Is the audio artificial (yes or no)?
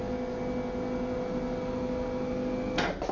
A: no